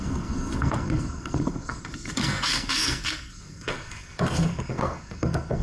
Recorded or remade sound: remade